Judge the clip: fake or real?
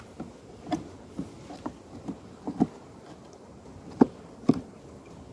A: real